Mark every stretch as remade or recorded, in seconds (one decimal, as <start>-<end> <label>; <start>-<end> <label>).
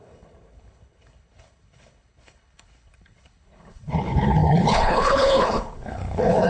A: 0.0-6.5 remade